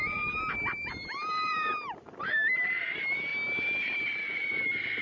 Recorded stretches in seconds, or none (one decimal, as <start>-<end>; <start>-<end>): 3.3-4.6